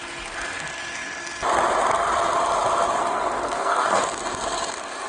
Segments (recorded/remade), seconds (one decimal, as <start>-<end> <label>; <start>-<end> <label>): 0.0-3.0 recorded; 3.0-4.0 remade; 4.0-5.1 recorded